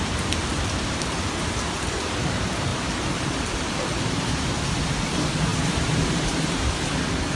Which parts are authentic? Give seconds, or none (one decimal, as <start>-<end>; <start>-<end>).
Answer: none